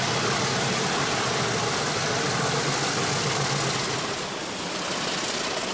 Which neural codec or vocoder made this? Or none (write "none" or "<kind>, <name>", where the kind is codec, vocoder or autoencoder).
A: none